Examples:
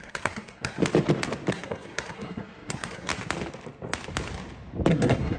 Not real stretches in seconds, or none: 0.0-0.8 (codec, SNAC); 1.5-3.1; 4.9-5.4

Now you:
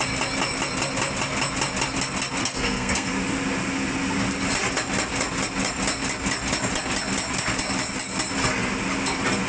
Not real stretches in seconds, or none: 2.4-3.1 (codec, SNAC)

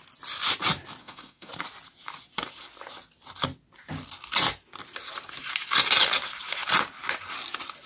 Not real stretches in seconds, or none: 1.0-1.5 (codec, SNAC)

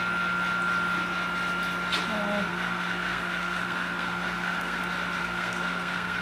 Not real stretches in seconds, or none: 2.5-4.8 (codec, SNAC); 5.2-6.2

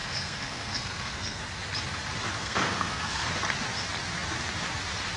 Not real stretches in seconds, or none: 0.0-1.4 (codec, SNAC); 2.4-3.3

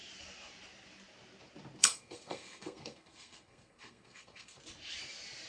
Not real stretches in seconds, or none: 1.8-4.6 (codec, SNAC)